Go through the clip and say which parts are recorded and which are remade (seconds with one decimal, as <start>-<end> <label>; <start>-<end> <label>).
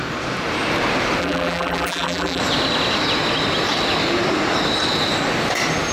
0.0-1.2 recorded; 1.2-2.4 remade; 2.4-5.9 recorded